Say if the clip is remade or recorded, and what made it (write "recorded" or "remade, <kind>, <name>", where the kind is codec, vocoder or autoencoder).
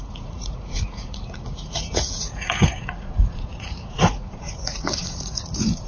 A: remade, vocoder, Vocos